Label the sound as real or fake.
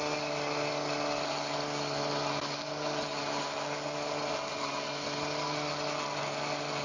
real